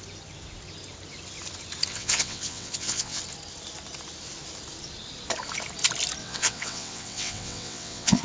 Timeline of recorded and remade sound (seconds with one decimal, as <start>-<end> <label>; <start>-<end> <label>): 0.0-1.9 recorded; 1.9-3.2 remade; 3.2-6.2 recorded; 6.2-8.2 remade